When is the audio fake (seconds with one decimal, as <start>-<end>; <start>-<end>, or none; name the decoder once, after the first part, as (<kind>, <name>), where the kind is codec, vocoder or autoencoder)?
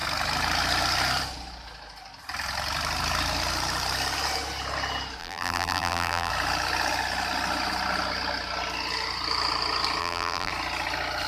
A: 5.2-6.3 (vocoder, BigVGAN v2); 10.0-10.5